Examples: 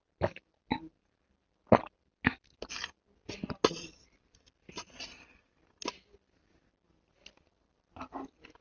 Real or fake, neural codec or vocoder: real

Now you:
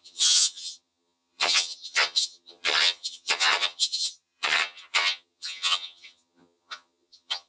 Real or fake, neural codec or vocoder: fake, vocoder, HiFi-GAN